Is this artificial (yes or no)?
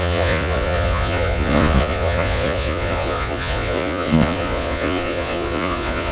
yes